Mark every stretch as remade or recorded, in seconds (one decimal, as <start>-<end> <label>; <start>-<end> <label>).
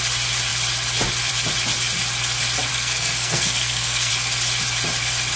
0.0-2.7 recorded; 2.7-4.1 remade; 4.1-5.4 recorded